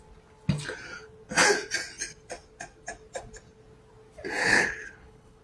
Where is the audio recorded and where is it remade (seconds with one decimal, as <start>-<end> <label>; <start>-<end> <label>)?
0.0-4.4 recorded; 4.4-5.4 remade